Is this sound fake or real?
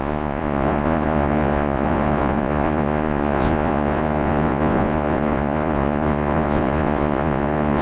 fake